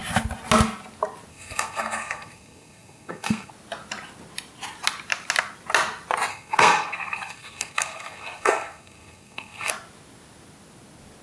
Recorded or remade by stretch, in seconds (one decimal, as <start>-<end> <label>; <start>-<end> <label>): 0.0-1.3 recorded; 1.3-3.5 remade; 3.5-6.3 recorded; 6.3-9.7 remade; 9.7-11.2 recorded